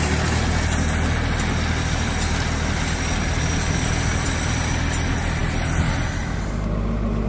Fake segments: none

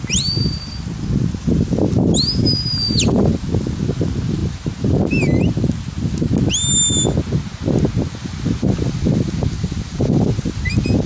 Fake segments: none

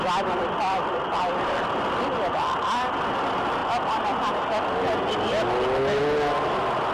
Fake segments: none

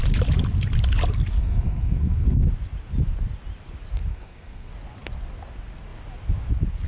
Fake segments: 1.3-2.5 (codec, SNAC); 4.1-4.7

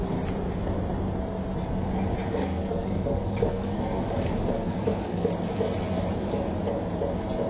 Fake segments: 2.4-4.0 (codec, SNAC); 4.5-5.3

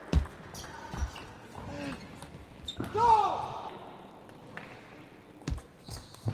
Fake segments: 5.6-6.3 (codec, SNAC)